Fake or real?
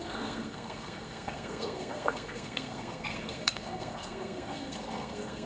fake